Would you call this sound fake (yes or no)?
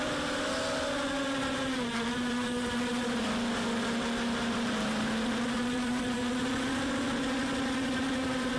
no